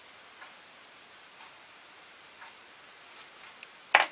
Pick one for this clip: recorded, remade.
recorded